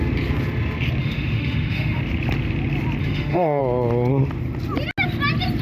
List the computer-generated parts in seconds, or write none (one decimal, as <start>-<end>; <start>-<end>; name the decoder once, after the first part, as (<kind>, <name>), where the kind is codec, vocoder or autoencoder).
1.0-2.0 (autoencoder, DAC-VAE); 3.0-3.6